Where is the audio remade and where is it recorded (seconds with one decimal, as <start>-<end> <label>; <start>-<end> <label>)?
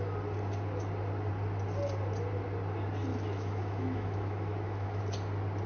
0.0-3.1 recorded; 3.1-5.0 remade; 5.0-5.7 recorded